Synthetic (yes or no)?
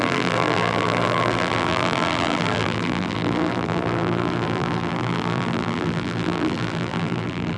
yes